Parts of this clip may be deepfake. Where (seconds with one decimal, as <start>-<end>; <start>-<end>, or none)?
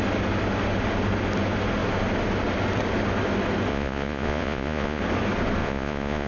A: 3.7-5.0; 5.6-6.3